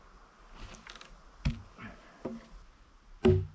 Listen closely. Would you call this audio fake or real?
real